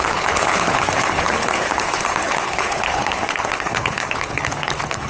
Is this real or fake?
fake